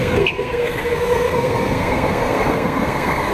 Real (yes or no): no